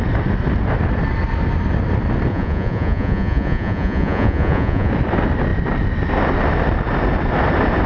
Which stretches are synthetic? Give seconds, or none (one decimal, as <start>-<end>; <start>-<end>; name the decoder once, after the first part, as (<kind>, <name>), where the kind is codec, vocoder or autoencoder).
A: 2.3-4.9 (vocoder, Vocos)